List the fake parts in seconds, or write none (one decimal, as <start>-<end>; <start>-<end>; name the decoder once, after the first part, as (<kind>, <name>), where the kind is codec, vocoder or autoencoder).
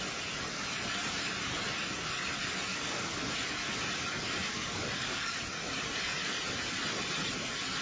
2.7-3.2 (codec, DAC); 4.4-5.4